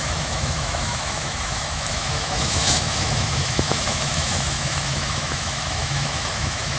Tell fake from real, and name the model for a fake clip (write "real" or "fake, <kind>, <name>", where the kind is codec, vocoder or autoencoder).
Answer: fake, autoencoder, DAC-VAE